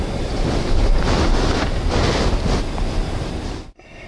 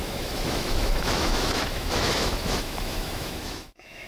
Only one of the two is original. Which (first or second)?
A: first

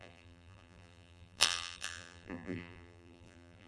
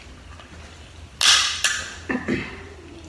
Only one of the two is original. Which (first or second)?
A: second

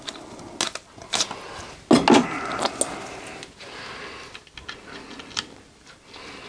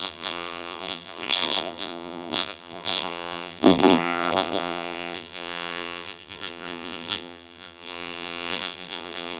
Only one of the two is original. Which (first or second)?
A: first